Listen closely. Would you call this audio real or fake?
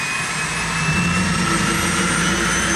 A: real